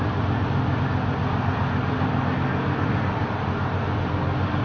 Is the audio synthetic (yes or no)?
no